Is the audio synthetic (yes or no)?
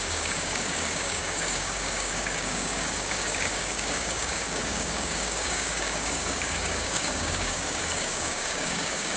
yes